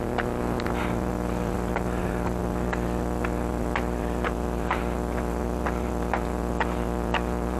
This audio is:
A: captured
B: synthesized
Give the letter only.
A